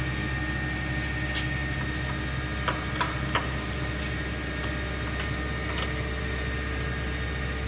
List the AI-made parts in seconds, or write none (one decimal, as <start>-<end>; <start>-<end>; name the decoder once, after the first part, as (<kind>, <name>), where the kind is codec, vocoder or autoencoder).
none